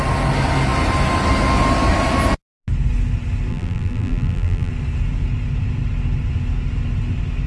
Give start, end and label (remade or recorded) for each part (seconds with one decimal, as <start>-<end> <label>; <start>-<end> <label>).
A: 0.0-3.5 recorded; 3.5-4.7 remade; 4.7-7.5 recorded